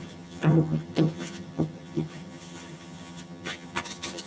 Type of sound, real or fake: fake